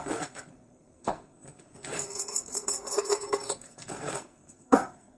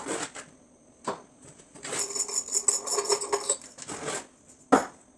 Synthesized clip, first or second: first